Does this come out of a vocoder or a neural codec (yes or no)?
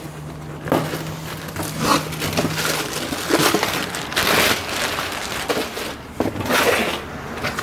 no